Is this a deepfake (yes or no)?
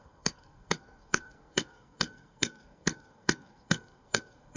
yes